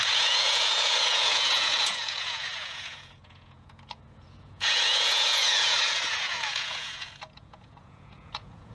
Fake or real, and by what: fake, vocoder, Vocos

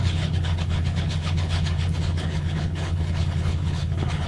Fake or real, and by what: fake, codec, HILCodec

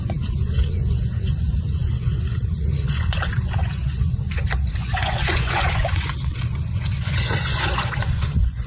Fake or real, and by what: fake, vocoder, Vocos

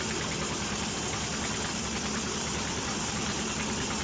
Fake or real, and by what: real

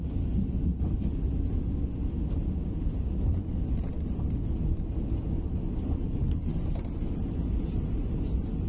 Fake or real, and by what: real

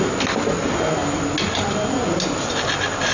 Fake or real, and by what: real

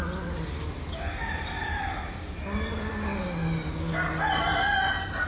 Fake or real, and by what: real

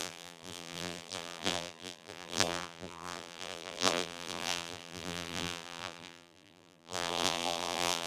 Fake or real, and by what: fake, vocoder, BigVGAN v2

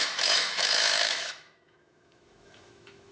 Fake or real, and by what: fake, autoencoder, DAC-VAE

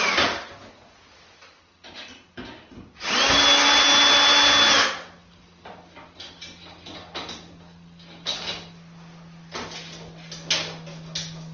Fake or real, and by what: real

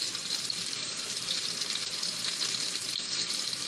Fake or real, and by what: fake, vocoder, BigVGAN v2